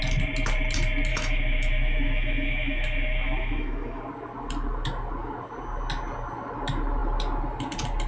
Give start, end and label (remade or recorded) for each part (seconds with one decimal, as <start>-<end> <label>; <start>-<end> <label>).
0.0-1.1 recorded; 1.1-4.0 remade; 4.0-8.1 recorded